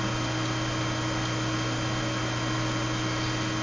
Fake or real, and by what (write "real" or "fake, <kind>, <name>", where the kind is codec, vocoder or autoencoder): real